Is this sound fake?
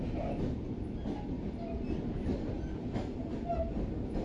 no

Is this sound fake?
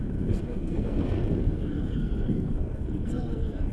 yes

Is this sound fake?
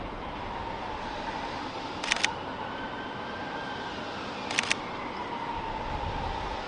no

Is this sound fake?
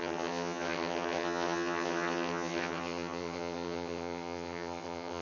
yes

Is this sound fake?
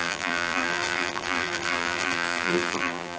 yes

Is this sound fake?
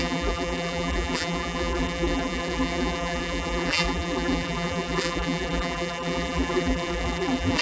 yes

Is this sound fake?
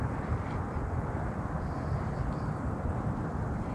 no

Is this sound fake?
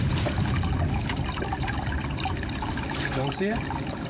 no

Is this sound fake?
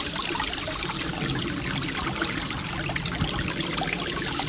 no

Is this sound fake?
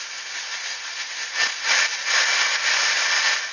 no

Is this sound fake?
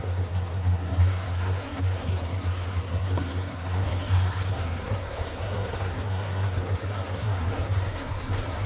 yes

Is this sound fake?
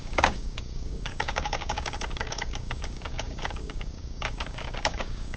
yes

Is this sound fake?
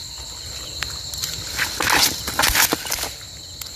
no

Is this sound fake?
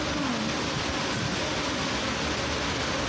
no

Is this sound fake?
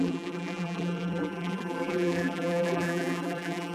yes